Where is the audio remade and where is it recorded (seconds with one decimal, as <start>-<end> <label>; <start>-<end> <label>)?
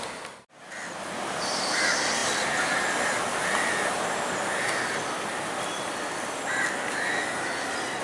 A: 0.0-8.0 recorded